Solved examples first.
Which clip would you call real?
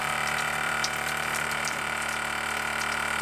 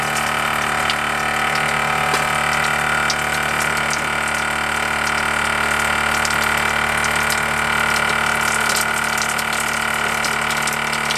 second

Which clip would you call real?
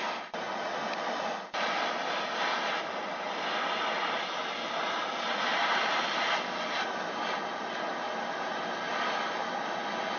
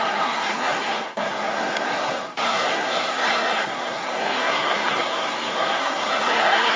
first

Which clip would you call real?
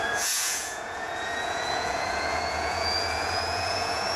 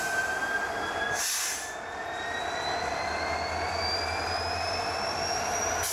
second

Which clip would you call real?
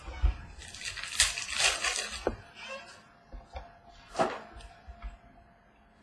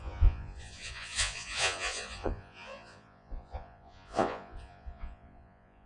first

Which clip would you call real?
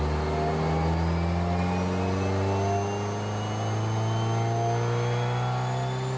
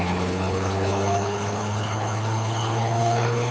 first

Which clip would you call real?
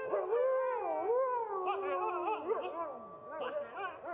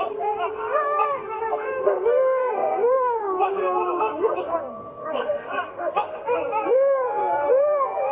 first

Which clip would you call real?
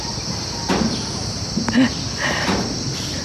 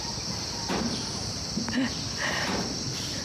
first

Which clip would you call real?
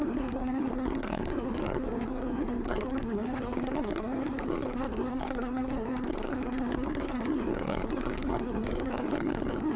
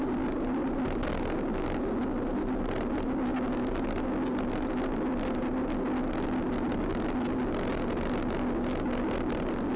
second